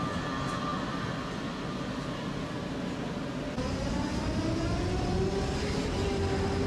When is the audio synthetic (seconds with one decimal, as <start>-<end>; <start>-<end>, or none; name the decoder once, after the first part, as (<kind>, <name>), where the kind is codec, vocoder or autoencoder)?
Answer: none